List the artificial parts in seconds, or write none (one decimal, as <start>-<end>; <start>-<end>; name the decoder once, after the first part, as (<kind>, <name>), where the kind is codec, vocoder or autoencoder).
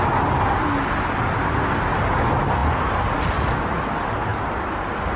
none